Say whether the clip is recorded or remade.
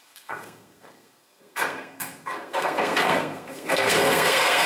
remade